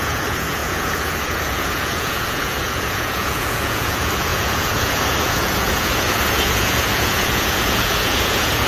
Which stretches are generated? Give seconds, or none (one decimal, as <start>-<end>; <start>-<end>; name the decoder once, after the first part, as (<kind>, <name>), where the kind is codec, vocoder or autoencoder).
0.0-8.7 (vocoder, Vocos)